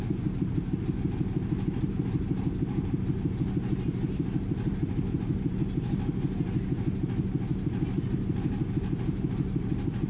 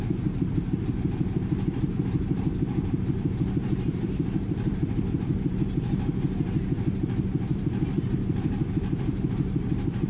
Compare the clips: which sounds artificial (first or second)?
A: second